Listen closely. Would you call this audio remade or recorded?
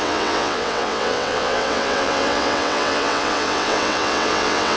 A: remade